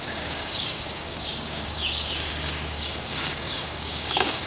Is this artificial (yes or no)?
yes